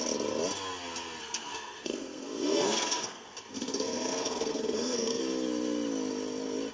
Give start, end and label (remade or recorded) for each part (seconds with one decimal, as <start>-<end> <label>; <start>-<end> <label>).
0.0-1.2 recorded; 1.2-5.2 remade; 5.2-6.7 recorded